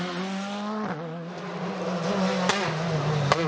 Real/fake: real